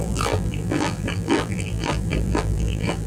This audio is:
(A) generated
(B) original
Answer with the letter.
A